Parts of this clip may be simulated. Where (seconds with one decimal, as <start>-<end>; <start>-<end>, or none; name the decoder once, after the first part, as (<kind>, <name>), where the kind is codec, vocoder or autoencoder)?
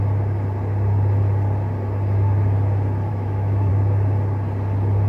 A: 3.1-3.7 (autoencoder, DAC-VAE)